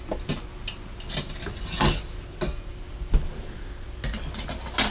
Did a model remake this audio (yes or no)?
no